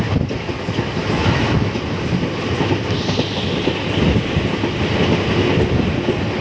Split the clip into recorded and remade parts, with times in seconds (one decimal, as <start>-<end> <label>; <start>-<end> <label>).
0.0-1.0 recorded; 1.0-1.8 remade; 1.8-6.4 recorded